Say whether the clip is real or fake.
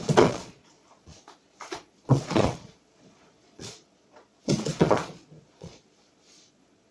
fake